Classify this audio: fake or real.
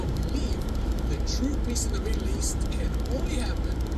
fake